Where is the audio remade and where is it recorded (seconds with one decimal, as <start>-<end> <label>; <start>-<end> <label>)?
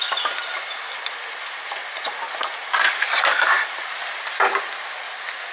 0.0-5.5 recorded